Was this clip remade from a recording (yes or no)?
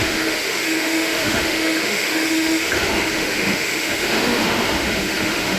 yes